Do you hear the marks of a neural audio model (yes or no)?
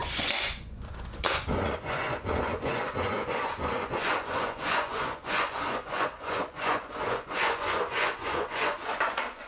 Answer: yes